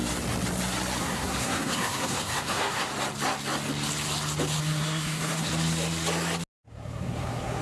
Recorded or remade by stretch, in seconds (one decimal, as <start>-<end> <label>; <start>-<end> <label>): 0.0-1.0 recorded; 1.0-2.9 remade; 2.9-4.6 recorded; 4.6-5.5 remade; 5.5-6.7 recorded; 6.7-7.6 remade